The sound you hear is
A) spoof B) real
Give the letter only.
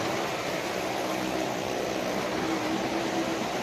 B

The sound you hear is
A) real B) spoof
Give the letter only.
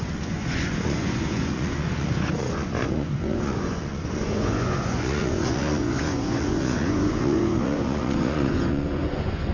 B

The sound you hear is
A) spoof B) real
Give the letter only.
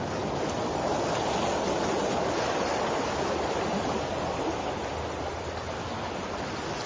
B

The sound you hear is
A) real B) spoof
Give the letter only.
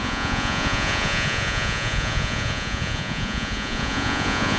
B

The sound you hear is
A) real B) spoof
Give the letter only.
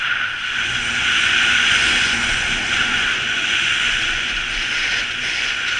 B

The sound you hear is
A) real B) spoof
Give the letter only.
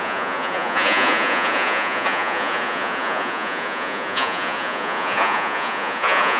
B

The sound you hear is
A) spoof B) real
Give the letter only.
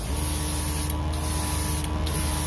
B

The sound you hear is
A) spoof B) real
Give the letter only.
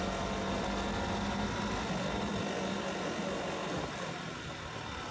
B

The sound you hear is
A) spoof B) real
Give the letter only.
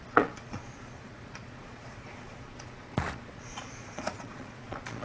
A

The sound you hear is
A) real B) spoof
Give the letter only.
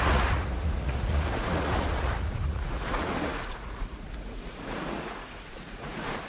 B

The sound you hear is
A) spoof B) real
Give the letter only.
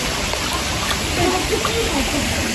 B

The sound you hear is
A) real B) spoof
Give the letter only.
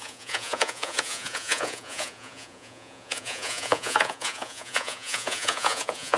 B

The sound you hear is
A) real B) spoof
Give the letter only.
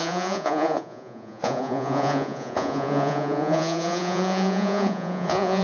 B